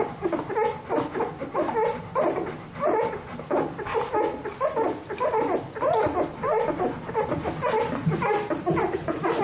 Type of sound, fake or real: real